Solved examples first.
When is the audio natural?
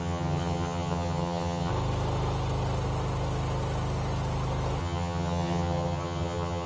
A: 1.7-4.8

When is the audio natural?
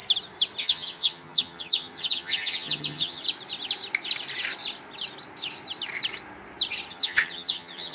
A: 0.0-0.6; 3.2-6.9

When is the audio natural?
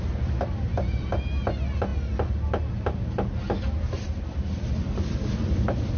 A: 0.0-6.0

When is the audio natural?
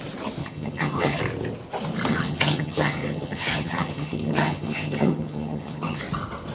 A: 0.0-0.4; 1.2-2.1; 6.0-6.5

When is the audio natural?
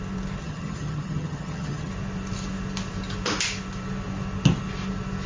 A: 0.0-0.4; 1.9-5.3